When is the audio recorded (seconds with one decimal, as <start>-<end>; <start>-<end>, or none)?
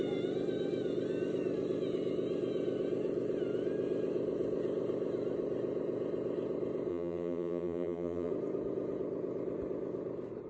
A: 0.0-6.9; 8.3-10.5